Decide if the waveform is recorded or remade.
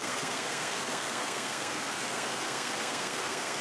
remade